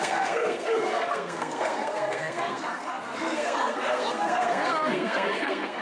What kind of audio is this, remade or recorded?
remade